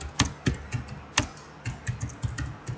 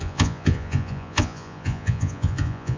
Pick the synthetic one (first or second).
second